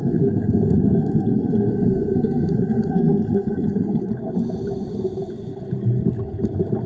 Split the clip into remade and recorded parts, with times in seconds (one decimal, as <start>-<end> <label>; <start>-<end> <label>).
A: 0.0-4.1 remade; 4.1-6.9 recorded